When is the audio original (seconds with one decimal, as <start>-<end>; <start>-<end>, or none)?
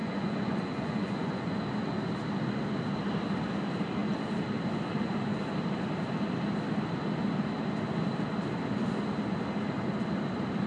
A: 1.6-10.7